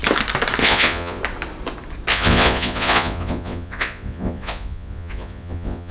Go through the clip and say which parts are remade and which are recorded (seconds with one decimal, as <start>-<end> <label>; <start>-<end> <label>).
0.0-0.6 recorded; 0.6-1.2 remade; 1.2-2.1 recorded; 2.1-5.9 remade